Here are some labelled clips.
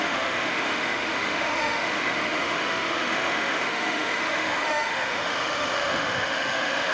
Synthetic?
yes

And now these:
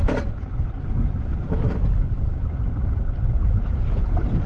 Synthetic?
yes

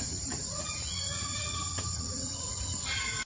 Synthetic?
yes